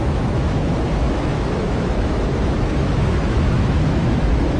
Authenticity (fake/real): fake